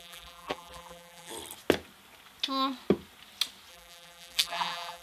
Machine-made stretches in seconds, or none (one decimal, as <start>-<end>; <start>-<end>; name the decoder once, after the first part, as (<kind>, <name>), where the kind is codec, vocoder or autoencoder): 0.0-1.3 (vocoder, BigVGAN v2); 3.7-5.0